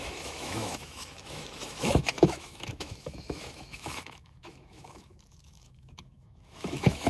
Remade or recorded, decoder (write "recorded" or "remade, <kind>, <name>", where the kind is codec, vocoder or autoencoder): remade, autoencoder, DAC-VAE